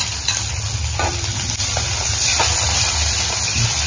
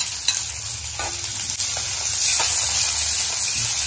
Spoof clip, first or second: first